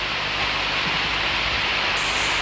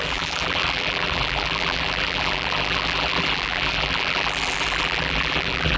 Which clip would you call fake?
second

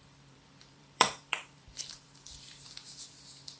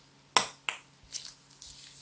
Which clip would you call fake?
first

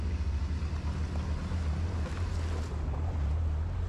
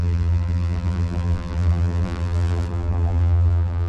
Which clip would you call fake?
second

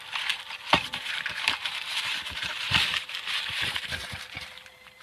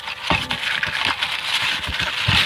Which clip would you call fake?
first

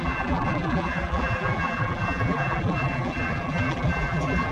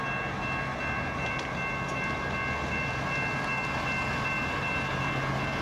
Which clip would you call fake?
first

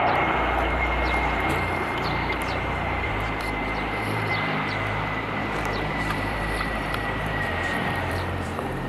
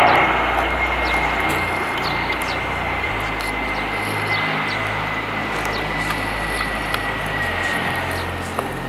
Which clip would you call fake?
first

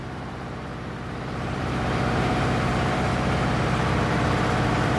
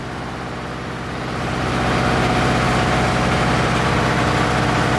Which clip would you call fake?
first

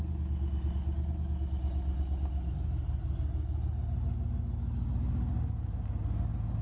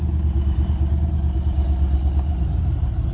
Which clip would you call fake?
second